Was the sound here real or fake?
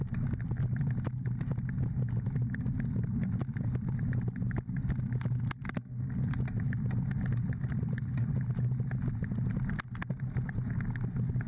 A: real